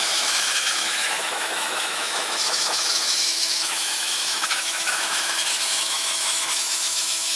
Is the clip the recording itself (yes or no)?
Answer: no